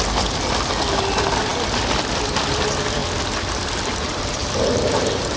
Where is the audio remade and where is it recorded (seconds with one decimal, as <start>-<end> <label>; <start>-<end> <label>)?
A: 0.0-5.4 recorded